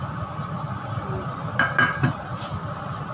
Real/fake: real